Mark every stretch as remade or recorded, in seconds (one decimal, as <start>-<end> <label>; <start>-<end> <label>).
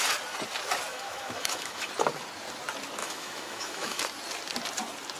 0.0-0.9 recorded; 0.9-1.9 remade; 1.9-3.0 recorded; 3.0-4.0 remade; 4.0-5.2 recorded